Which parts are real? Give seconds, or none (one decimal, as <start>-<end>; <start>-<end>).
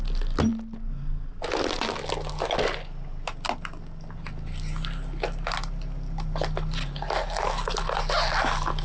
0.0-8.8